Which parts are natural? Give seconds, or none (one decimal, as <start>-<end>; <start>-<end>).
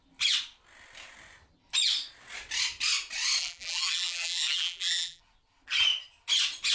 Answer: 0.0-3.4; 5.2-6.7